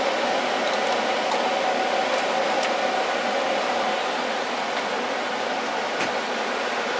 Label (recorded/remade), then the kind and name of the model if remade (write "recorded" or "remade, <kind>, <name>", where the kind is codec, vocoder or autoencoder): recorded